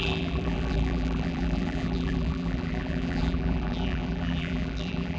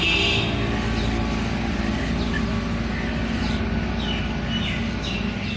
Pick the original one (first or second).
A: second